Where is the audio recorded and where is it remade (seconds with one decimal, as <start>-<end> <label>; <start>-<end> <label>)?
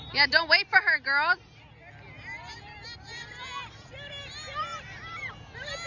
0.0-5.9 recorded